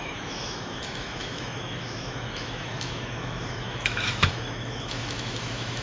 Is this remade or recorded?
remade